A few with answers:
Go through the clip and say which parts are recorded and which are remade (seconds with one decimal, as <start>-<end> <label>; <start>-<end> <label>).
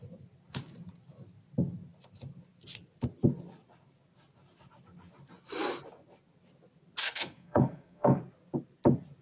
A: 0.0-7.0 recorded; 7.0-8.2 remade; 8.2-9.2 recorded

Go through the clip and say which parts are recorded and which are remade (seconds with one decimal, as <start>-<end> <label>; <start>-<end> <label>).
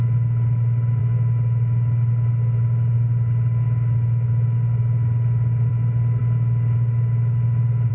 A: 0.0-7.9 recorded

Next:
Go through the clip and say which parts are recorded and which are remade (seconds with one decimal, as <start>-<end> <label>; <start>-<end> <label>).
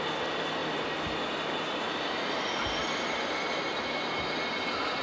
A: 0.0-5.0 recorded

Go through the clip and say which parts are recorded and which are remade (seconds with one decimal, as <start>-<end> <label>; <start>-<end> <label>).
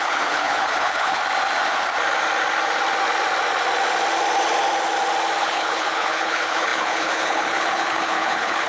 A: 0.0-1.2 remade; 1.2-5.4 recorded; 5.4-8.7 remade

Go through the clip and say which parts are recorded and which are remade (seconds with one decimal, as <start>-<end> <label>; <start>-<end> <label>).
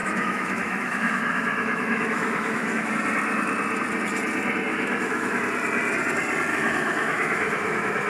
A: 0.0-2.9 remade; 2.9-4.7 recorded; 4.7-5.4 remade; 5.4-6.5 recorded; 6.5-8.1 remade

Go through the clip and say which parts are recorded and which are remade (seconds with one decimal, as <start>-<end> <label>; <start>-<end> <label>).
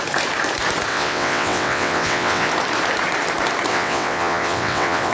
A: 0.0-0.9 recorded; 0.9-2.5 remade; 2.5-3.7 recorded; 3.7-5.1 remade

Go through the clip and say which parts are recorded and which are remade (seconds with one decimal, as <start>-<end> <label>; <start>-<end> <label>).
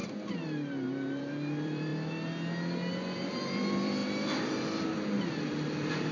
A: 0.0-1.9 remade; 1.9-2.9 recorded; 2.9-4.0 remade; 4.0-5.2 recorded; 5.2-6.1 remade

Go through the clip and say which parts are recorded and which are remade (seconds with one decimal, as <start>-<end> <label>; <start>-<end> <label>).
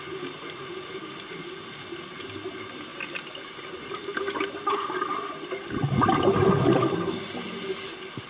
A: 0.0-8.3 recorded